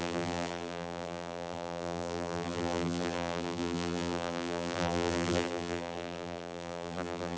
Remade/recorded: remade